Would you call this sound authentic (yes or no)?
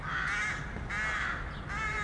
yes